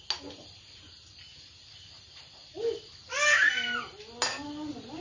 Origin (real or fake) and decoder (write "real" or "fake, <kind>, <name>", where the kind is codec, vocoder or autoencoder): real